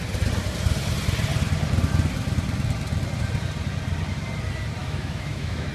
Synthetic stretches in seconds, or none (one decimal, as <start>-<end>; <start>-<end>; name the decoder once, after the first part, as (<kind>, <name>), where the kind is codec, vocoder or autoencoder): 4.8-5.7 (autoencoder, DAC-VAE)